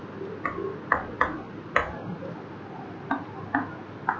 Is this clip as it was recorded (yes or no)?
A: yes